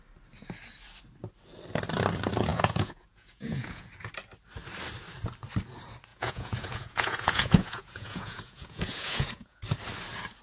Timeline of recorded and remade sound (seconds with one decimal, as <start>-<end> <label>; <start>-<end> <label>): 0.0-2.5 recorded; 2.5-3.9 remade; 3.9-6.1 recorded; 6.1-9.6 remade; 9.6-10.4 recorded